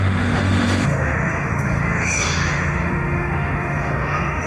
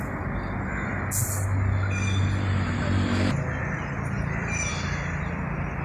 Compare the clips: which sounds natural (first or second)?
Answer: second